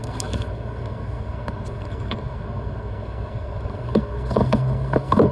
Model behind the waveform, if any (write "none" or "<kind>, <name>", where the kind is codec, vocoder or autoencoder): codec, SNAC